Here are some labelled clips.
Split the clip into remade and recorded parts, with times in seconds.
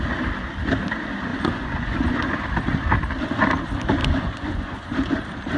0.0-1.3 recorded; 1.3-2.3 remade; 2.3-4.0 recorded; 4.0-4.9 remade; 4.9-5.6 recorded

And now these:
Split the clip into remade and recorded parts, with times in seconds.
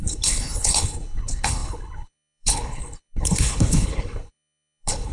0.0-5.1 remade